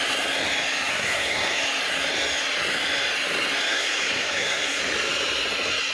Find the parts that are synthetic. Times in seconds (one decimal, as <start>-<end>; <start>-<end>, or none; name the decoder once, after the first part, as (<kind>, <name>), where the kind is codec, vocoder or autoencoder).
0.9-1.6 (codec, SNAC); 3.7-4.8